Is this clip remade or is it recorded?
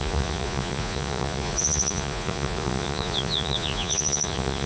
remade